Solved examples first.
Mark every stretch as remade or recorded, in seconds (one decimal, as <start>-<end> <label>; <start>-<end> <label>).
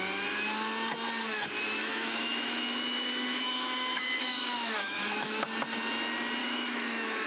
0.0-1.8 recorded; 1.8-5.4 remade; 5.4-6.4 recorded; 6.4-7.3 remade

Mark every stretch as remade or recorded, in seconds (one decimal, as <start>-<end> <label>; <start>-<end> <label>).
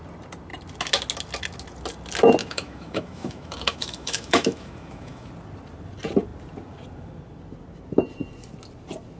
0.0-2.4 recorded; 2.4-5.3 remade; 5.3-9.2 recorded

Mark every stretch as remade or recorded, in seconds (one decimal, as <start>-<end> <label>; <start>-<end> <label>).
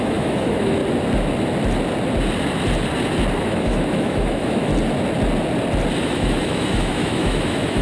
0.0-0.8 remade; 0.8-3.4 recorded; 3.4-4.7 remade; 4.7-6.0 recorded; 6.0-7.8 remade